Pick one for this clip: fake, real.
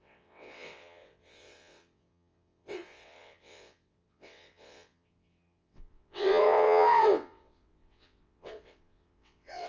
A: fake